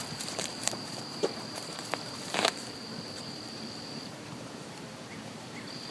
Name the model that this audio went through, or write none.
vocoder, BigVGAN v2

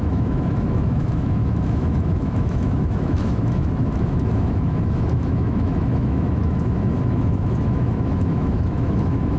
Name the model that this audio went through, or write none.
autoencoder, DAC-VAE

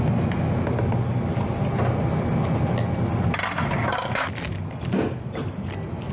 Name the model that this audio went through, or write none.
none